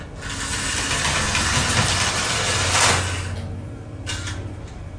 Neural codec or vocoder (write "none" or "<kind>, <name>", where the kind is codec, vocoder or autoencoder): none